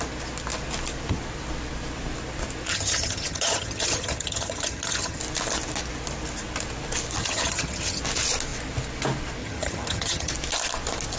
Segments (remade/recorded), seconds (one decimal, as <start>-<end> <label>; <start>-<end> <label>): 0.0-2.7 recorded; 2.7-5.2 remade; 5.2-7.2 recorded; 7.2-8.0 remade; 8.0-9.4 recorded; 9.4-10.3 remade; 10.3-11.2 recorded